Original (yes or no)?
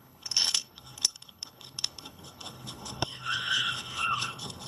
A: no